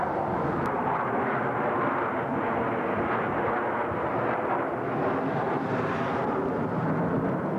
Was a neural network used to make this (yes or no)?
no